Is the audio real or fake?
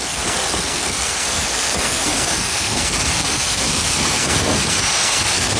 fake